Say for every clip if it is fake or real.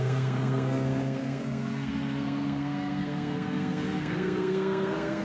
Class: fake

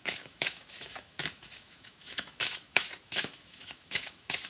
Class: fake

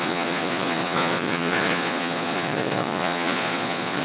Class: fake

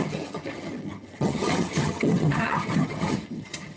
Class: fake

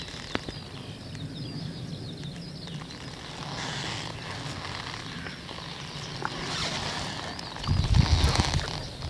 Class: real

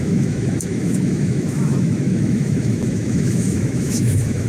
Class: fake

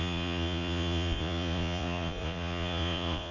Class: fake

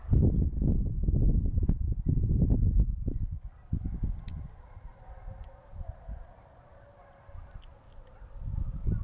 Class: real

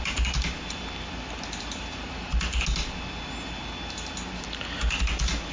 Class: real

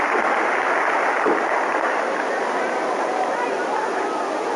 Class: real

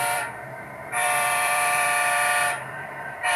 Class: fake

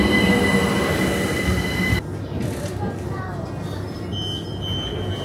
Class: real